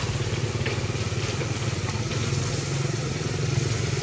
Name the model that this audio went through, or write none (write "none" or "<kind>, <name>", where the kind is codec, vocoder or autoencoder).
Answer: none